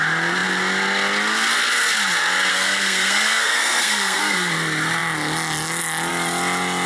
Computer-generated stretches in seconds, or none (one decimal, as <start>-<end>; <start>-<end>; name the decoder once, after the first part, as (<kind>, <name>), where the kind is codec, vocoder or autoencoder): 2.5-4.5 (codec, SNAC)